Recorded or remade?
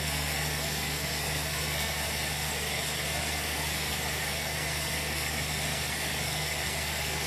remade